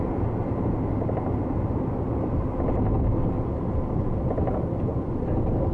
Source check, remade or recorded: recorded